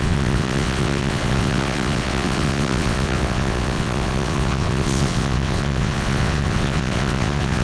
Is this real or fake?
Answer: fake